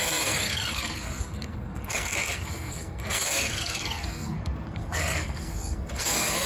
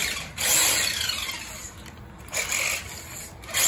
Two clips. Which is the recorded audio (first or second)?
second